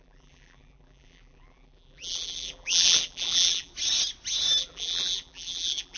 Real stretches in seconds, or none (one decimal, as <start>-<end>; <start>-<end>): 3.7-4.6